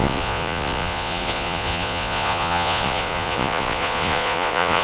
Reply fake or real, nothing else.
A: fake